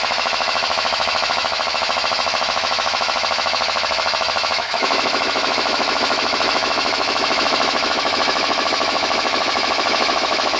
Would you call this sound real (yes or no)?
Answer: no